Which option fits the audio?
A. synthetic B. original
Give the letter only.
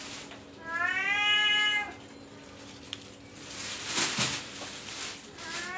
B